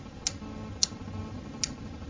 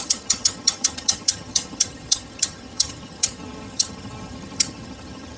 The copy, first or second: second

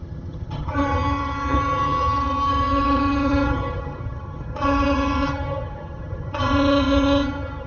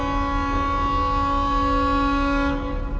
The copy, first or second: first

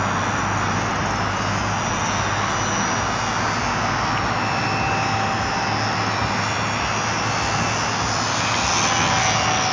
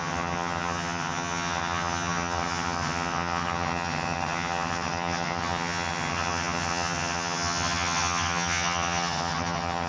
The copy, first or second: second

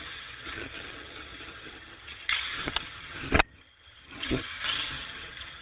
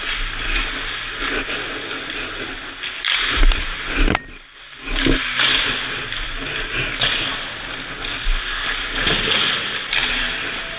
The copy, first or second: first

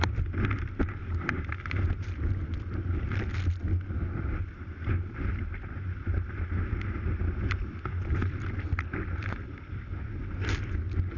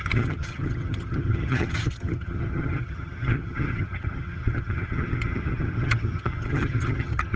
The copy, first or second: second